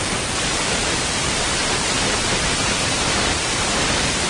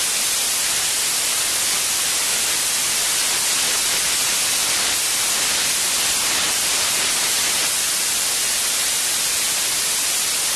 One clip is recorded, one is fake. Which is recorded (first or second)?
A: second